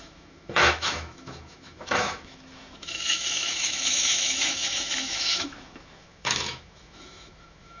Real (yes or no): no